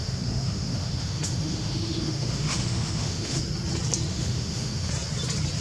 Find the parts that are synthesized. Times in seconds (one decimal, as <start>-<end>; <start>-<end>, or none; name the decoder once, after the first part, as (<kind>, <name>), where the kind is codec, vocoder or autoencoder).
0.0-3.4 (autoencoder, DAC-VAE); 4.1-4.9